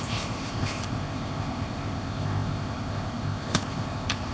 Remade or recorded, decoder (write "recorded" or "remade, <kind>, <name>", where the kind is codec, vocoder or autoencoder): remade, codec, ZipCodec